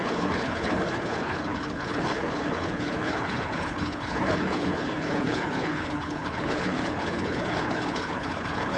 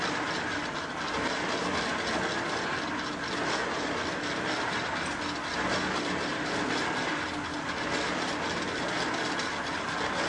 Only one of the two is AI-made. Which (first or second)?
first